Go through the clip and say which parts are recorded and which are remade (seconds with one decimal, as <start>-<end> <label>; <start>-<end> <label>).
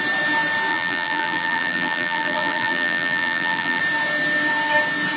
0.0-0.7 recorded; 0.7-3.8 remade; 3.8-5.2 recorded